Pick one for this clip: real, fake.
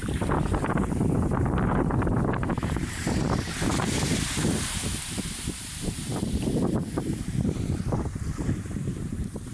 fake